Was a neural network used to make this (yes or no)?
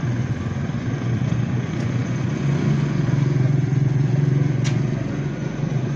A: yes